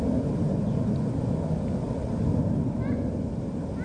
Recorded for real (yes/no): yes